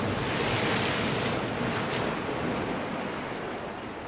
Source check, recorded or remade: recorded